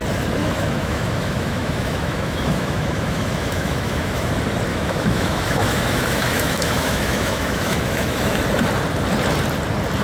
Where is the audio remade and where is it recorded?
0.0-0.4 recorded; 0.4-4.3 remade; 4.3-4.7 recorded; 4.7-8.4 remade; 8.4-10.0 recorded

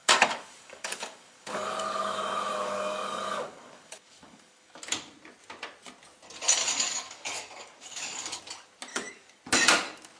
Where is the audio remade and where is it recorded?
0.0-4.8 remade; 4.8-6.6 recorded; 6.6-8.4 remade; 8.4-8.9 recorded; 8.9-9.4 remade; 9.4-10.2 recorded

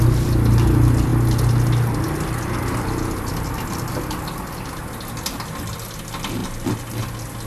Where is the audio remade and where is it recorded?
0.0-7.5 recorded

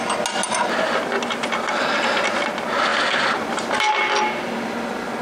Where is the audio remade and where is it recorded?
0.0-5.2 recorded